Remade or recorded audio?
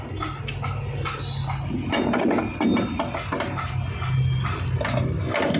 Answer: recorded